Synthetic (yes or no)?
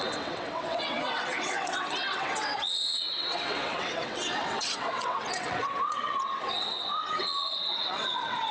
yes